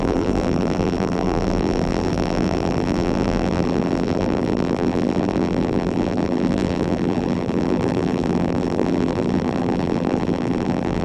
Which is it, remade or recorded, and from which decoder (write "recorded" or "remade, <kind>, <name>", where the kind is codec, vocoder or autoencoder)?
remade, vocoder, BigVGAN v2